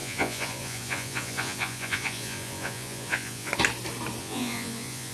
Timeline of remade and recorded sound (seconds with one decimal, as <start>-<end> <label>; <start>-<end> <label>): 0.0-3.5 remade; 3.5-4.2 recorded; 4.2-5.1 remade